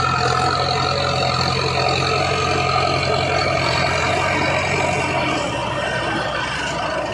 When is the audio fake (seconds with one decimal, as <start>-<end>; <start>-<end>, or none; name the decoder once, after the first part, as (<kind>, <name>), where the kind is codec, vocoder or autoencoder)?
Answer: 3.4-4.1 (vocoder, BigVGAN v2)